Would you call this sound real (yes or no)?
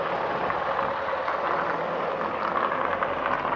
yes